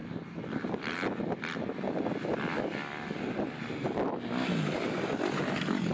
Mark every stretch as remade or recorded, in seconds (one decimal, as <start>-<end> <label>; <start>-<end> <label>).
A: 0.0-5.9 recorded